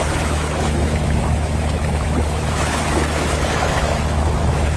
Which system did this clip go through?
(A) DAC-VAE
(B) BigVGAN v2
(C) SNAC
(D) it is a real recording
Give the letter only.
A